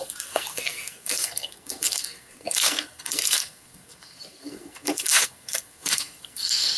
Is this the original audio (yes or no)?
no